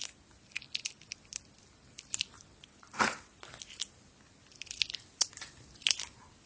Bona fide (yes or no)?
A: yes